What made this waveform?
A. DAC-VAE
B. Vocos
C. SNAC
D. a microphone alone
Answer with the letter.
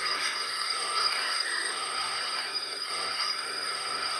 C